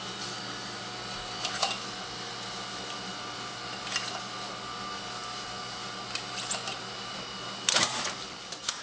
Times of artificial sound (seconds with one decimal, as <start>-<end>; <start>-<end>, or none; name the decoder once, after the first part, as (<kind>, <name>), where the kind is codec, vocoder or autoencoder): none